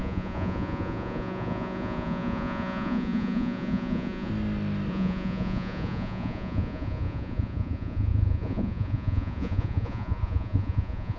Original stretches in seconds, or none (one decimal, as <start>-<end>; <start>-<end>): 4.3-4.9